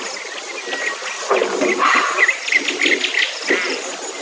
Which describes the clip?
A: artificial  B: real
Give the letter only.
B